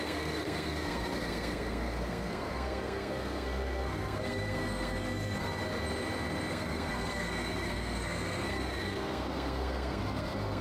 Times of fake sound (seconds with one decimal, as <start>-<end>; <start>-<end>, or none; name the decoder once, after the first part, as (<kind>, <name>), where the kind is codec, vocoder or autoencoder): 0.0-5.6 (codec, SNAC); 6.5-10.6